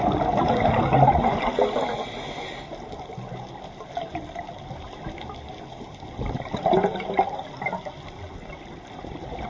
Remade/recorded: recorded